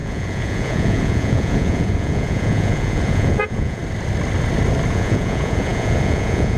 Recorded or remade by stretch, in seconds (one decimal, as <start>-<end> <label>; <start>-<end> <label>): 0.0-3.8 remade; 3.8-4.9 recorded; 4.9-6.6 remade